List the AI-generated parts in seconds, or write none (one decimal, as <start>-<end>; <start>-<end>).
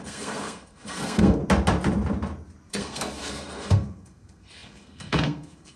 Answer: 0.0-1.4; 2.7-5.8